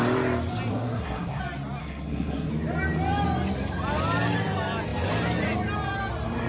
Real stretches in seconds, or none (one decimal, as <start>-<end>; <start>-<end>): 0.0-0.7; 1.4-1.8; 2.5-6.5